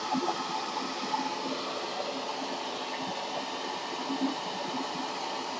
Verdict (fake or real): fake